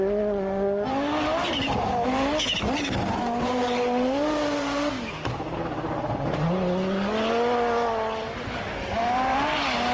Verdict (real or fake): real